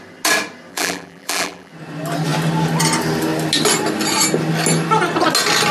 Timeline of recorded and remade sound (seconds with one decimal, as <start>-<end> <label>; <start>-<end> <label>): 0.0-0.7 recorded; 0.7-1.7 remade; 1.7-5.7 recorded